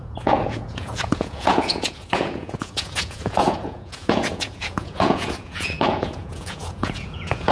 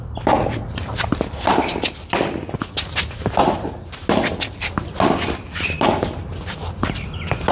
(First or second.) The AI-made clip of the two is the first